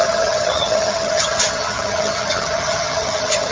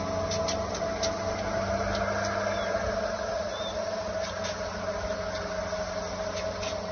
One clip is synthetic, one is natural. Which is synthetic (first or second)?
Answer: first